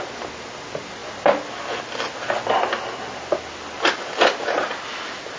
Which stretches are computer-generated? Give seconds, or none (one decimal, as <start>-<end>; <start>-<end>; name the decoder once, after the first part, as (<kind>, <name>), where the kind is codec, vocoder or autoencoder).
none